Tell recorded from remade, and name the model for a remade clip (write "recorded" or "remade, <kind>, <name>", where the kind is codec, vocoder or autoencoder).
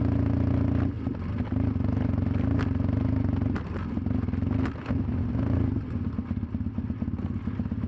recorded